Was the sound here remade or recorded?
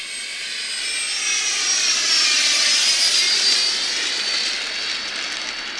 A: recorded